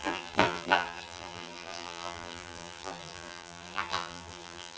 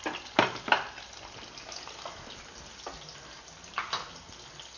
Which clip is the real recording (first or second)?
second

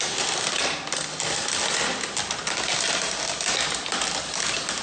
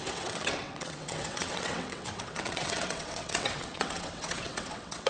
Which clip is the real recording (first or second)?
first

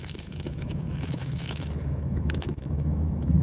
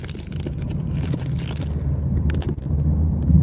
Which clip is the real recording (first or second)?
second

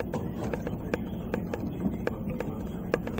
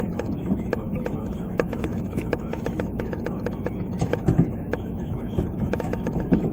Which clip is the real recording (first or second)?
first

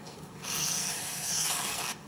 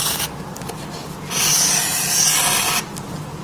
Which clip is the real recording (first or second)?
second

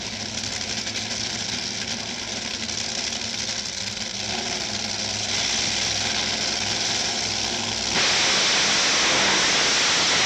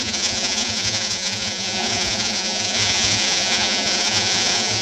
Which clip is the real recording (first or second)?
first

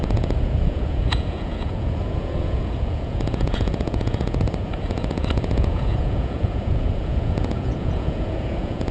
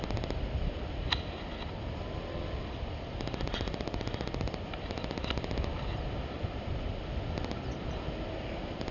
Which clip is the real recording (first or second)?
second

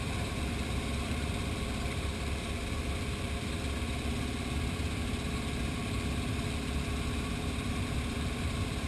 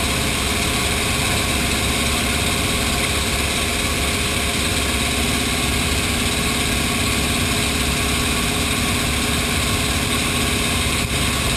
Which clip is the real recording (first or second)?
second